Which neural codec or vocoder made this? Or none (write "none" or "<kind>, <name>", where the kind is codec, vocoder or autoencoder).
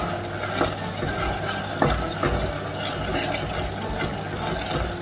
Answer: none